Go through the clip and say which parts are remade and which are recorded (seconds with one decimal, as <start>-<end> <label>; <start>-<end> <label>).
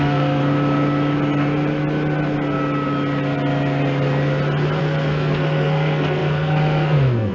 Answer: 0.0-0.4 remade; 0.4-4.8 recorded; 4.8-7.3 remade